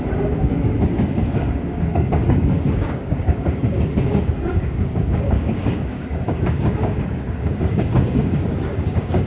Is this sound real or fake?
fake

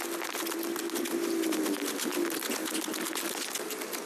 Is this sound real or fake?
real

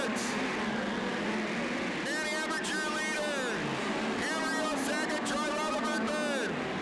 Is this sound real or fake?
real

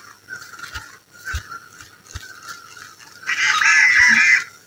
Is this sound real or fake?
real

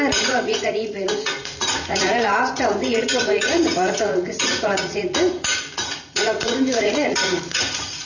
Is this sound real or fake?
fake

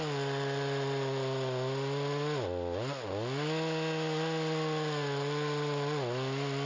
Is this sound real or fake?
real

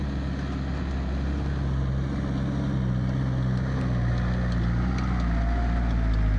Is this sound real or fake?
real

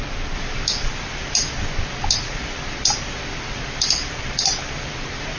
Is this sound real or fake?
real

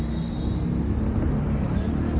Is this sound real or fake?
real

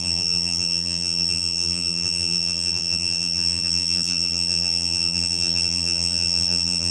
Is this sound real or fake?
fake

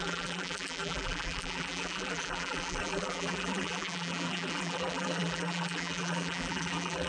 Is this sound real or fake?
fake